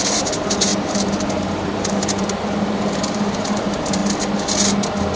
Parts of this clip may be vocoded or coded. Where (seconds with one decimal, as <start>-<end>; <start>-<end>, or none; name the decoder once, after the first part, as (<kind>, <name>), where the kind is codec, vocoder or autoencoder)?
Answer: 0.0-4.0 (vocoder, BigVGAN v2)